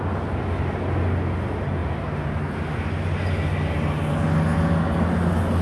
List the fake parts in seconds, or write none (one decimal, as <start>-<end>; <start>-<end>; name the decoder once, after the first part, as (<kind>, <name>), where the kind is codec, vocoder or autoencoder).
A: none